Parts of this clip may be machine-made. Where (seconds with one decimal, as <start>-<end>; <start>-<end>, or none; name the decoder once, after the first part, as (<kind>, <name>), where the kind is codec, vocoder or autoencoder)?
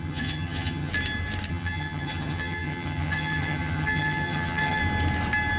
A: 0.0-0.9 (vocoder, HiFi-GAN); 1.5-4.8